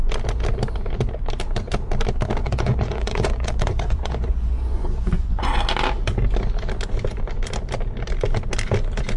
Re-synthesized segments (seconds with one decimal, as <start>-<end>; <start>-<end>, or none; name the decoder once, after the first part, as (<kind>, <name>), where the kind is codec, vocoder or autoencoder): 2.4-5.5 (vocoder, Vocos)